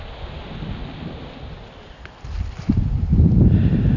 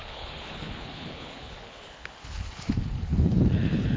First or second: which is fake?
second